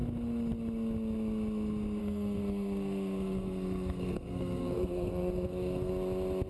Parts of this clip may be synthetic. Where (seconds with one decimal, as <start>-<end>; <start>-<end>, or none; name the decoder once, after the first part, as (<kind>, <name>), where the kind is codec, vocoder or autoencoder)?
2.0-5.9 (codec, SNAC)